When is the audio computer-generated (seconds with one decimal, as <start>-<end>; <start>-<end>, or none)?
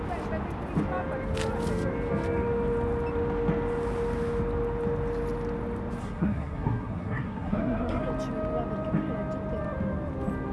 6.0-8.0